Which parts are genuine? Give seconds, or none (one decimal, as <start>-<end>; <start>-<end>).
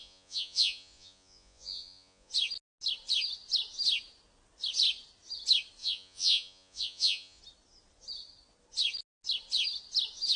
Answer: 2.3-5.8; 7.4-10.4